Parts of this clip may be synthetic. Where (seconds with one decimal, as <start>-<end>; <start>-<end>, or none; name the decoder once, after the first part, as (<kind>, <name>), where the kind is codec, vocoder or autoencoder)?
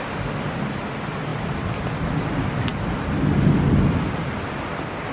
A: none